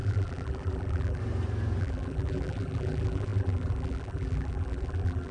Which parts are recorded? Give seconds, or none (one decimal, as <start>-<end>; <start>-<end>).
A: 1.2-1.8